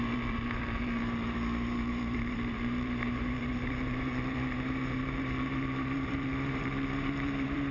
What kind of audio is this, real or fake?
fake